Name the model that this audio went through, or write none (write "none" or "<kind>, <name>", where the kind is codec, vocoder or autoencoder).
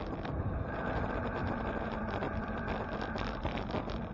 vocoder, BigVGAN v2